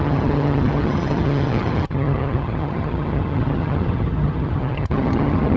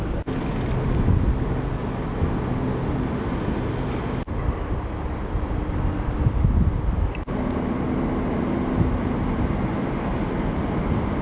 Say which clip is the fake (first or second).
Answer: first